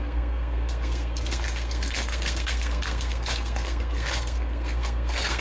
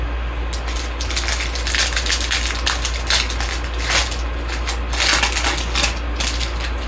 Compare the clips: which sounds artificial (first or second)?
first